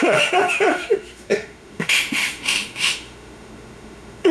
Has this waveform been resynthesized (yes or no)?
yes